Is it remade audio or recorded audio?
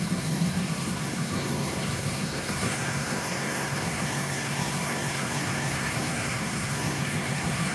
remade